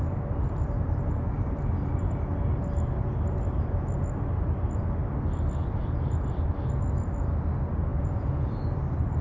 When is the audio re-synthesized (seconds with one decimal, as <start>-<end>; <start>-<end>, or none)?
7.9-8.5

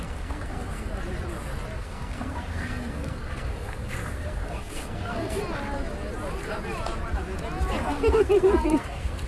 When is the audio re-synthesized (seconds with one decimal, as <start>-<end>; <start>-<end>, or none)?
0.0-0.9; 1.8-5.4; 7.8-9.3

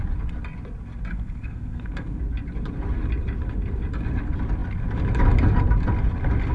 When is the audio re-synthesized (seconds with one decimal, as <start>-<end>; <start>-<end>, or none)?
1.1-2.2

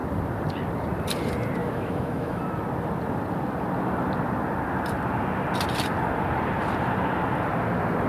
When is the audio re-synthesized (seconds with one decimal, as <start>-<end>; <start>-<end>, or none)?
1.6-2.4

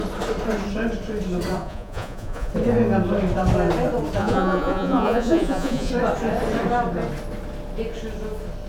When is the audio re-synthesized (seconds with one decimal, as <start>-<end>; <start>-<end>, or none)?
1.6-2.5; 4.2-5.9

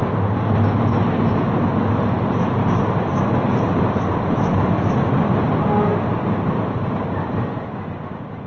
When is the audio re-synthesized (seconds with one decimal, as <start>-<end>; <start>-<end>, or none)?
4.7-5.9; 7.2-8.5